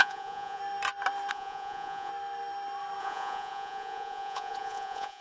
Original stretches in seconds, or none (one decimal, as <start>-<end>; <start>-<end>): 0.6-1.3; 2.1-3.0